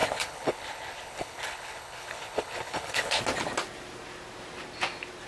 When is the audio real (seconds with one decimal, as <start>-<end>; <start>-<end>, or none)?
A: 3.2-5.3